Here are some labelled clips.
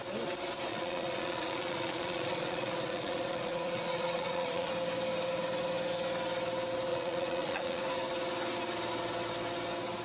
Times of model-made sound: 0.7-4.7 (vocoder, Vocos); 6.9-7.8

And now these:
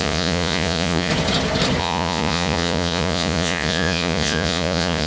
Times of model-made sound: 0.0-1.1 (vocoder, Vocos); 1.8-5.1

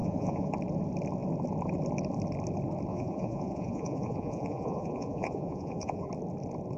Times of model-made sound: 0.0-0.5 (vocoder, Vocos); 2.9-6.1

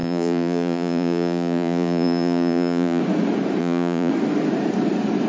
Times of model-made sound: 0.0-3.0 (vocoder, Vocos); 3.6-4.1

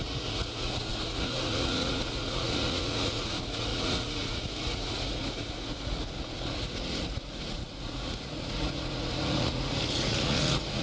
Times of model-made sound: 0.0-10.8 (vocoder, Vocos)

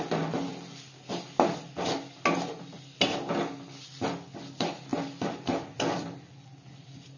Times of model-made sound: none

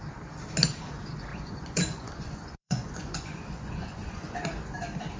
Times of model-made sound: 1.3-4.4 (vocoder, Vocos)